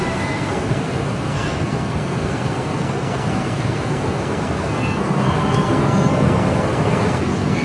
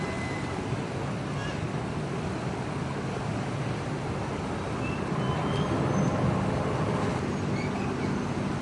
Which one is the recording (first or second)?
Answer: second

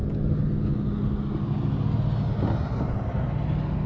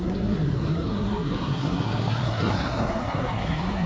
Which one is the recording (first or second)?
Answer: first